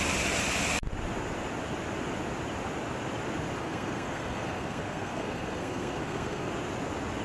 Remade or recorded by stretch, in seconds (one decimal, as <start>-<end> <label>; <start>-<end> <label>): 0.0-3.6 recorded; 3.6-6.5 remade; 6.5-7.2 recorded